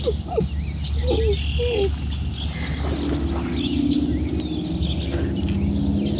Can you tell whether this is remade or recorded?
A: recorded